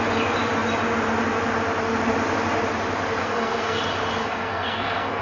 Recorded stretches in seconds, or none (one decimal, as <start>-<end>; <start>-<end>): 0.0-3.2; 3.8-4.2